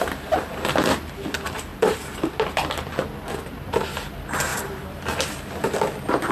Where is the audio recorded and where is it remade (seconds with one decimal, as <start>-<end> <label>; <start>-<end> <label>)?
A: 0.0-1.7 recorded; 1.7-2.3 remade; 2.3-6.3 recorded